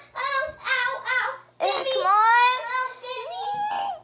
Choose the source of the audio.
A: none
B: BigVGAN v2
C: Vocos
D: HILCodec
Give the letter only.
A